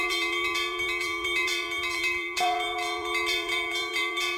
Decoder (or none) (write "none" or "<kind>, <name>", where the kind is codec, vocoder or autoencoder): vocoder, BigVGAN v2